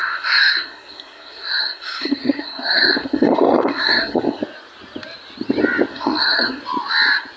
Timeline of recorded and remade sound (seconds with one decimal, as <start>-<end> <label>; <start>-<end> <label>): 0.0-4.4 remade; 4.4-5.9 recorded; 5.9-6.6 remade; 6.6-7.4 recorded